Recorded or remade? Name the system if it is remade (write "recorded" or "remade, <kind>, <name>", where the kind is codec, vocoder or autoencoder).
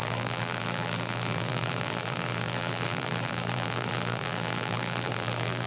remade, vocoder, BigVGAN v2